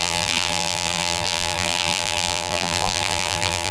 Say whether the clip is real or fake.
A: fake